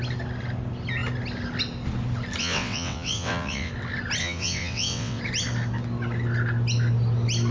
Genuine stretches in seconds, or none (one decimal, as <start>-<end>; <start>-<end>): 0.0-2.4; 3.7-4.2; 5.2-7.5